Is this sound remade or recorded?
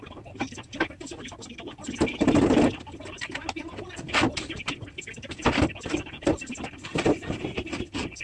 recorded